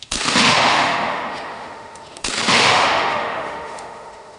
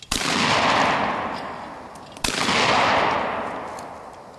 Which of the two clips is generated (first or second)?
first